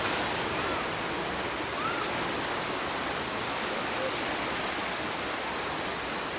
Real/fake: real